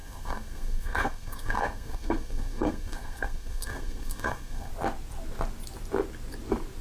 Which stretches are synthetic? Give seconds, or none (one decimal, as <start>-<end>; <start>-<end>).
0.0-4.7